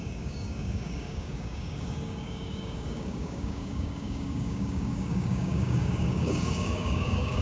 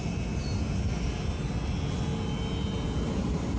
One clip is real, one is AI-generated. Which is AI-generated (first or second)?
first